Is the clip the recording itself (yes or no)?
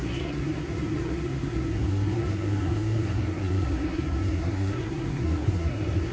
no